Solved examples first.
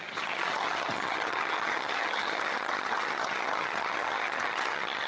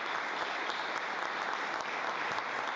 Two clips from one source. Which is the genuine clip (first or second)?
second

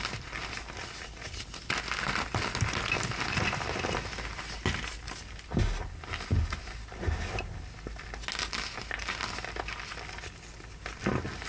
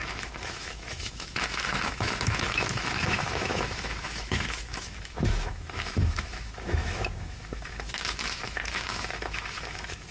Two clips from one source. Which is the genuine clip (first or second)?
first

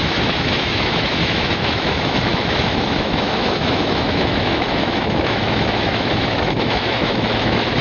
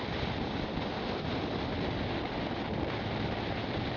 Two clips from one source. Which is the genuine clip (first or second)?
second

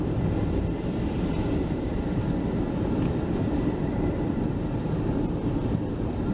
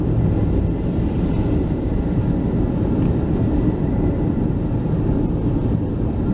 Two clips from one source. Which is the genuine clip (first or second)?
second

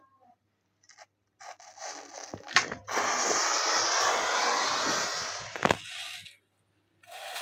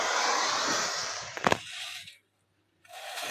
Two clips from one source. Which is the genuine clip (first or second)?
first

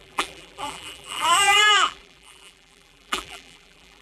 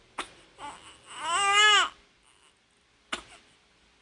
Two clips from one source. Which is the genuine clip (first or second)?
second